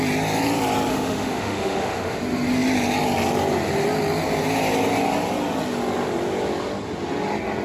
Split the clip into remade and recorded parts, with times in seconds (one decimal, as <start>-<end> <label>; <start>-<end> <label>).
0.0-0.9 recorded; 0.9-2.2 remade; 2.2-7.6 recorded